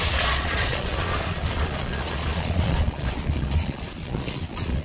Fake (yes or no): yes